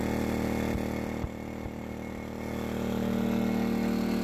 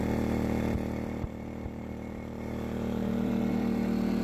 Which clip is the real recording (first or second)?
first